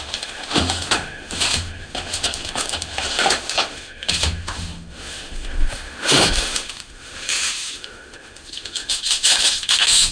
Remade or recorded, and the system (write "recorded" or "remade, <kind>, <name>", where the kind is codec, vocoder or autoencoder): remade, autoencoder, DAC-VAE